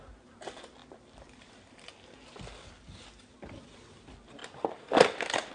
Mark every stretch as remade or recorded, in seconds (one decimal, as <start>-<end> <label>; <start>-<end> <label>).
0.0-5.5 recorded